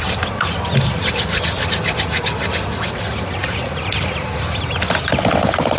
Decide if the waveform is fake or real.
real